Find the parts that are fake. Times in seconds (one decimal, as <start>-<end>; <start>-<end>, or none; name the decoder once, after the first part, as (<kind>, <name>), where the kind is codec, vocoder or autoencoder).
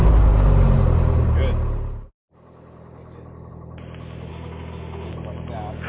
4.3-5.1 (autoencoder, DAC-VAE)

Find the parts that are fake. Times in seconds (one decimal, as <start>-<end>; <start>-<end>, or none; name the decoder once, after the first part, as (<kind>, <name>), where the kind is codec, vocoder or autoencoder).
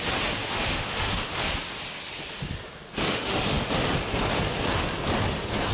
0.4-1.3 (autoencoder, DAC-VAE); 3.0-3.7